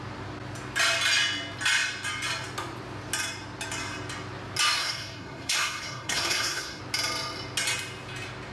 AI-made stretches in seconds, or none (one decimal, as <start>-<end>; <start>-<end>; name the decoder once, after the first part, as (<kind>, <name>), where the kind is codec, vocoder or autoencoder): 4.8-6.8 (codec, SNAC)